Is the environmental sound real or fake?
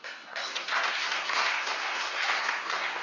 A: fake